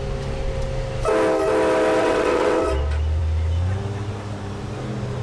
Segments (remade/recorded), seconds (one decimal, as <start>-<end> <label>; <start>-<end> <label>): 0.0-2.0 recorded; 2.0-2.7 remade; 2.7-5.2 recorded